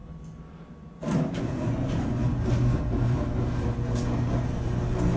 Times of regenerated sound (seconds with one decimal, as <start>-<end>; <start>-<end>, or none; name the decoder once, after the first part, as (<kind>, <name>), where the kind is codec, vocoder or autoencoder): 1.4-2.2 (vocoder, Vocos)